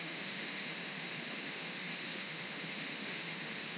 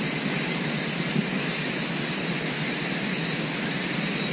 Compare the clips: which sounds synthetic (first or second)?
first